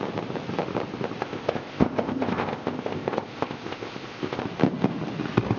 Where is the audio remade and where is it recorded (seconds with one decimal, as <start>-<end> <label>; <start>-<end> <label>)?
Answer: 0.0-1.2 recorded; 1.2-4.4 remade; 4.4-5.6 recorded